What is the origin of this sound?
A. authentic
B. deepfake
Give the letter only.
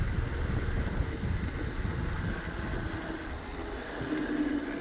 A